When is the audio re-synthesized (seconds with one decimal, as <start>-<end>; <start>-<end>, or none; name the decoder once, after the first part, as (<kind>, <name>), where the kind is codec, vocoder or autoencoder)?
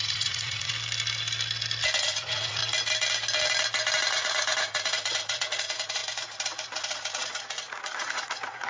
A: 0.0-0.7 (vocoder, Vocos); 2.0-2.6; 4.1-8.7